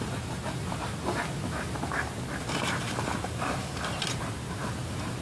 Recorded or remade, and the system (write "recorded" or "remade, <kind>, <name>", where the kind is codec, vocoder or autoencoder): remade, vocoder, BigVGAN v2